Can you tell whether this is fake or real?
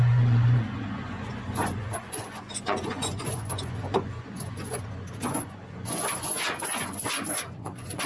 fake